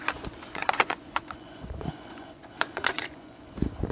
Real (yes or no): no